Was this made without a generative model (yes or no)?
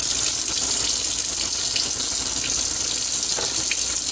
yes